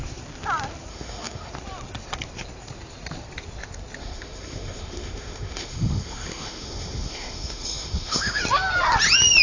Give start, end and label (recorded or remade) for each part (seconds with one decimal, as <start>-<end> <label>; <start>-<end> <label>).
0.0-0.9 recorded; 0.9-1.5 remade; 1.5-4.0 recorded; 4.0-8.4 remade; 8.4-9.4 recorded